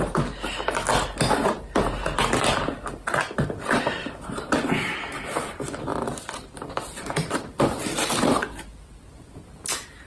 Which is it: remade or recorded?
recorded